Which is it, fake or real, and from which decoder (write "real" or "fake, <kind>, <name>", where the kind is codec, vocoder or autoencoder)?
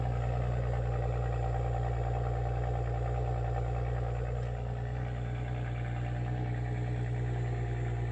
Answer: real